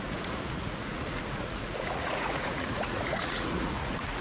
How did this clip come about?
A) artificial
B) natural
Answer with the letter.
A